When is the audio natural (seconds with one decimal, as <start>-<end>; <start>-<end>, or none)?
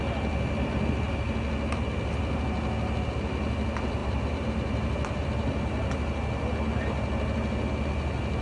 0.0-4.0; 5.5-8.4